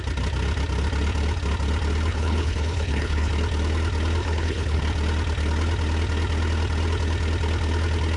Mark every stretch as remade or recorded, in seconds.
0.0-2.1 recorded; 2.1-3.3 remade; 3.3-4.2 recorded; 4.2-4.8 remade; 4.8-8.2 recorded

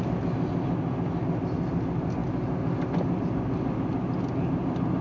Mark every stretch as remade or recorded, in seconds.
0.0-5.0 recorded